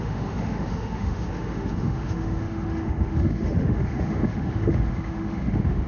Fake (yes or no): yes